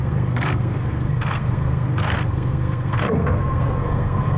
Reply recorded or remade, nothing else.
remade